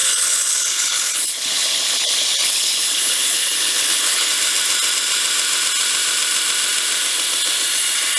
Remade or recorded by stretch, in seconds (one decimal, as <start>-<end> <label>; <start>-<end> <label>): 0.0-4.3 remade; 4.3-8.2 recorded